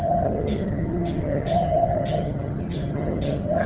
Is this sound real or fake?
fake